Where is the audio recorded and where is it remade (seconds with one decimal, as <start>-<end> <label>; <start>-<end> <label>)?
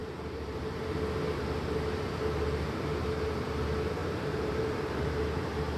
0.0-0.8 remade; 0.8-4.0 recorded; 4.0-5.2 remade; 5.2-5.8 recorded